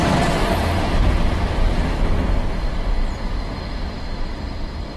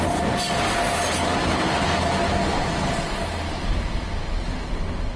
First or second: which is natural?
second